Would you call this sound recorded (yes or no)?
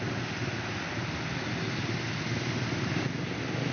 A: yes